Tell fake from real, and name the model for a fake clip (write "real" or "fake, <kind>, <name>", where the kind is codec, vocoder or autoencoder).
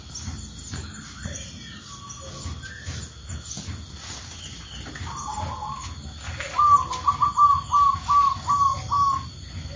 real